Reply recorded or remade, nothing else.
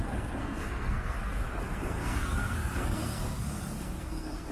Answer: remade